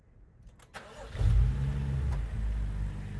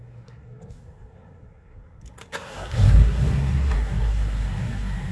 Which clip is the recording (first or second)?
first